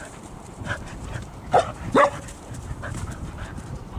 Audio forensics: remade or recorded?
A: remade